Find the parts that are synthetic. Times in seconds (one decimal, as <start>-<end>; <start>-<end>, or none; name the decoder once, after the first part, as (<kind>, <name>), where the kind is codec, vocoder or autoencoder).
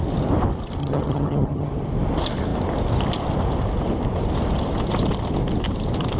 0.8-1.7 (vocoder, HiFi-GAN)